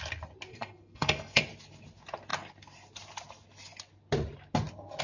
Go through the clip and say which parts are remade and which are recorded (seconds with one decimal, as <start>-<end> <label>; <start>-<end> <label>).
0.0-0.5 recorded; 0.5-1.4 remade; 1.4-5.0 recorded